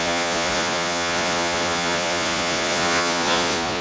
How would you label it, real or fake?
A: fake